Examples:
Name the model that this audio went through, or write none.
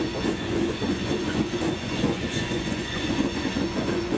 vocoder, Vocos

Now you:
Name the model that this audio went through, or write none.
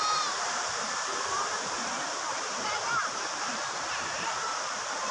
vocoder, BigVGAN v2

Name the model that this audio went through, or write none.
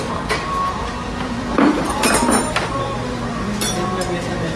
none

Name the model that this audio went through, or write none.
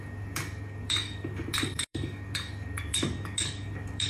codec, DAC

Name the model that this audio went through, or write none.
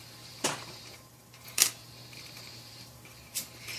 vocoder, BigVGAN v2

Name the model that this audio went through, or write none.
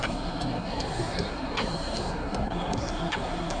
codec, SNAC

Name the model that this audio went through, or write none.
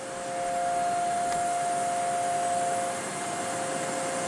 none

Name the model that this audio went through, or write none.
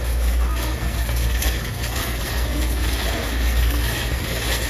codec, SNAC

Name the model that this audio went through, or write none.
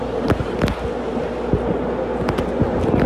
none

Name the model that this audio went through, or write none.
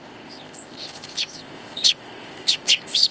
codec, ZipCodec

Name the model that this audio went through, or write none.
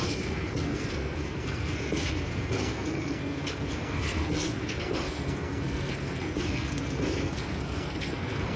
codec, SNAC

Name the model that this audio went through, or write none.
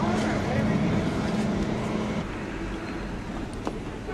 none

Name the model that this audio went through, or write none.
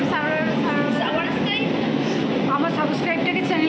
none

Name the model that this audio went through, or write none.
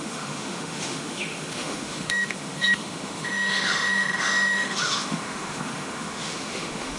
autoencoder, DAC-VAE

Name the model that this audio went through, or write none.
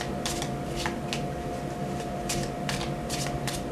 none